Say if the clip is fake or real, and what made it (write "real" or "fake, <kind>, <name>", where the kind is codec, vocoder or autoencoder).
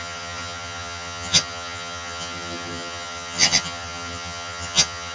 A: fake, vocoder, HiFi-GAN